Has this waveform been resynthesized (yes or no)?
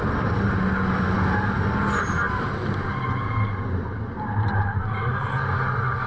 no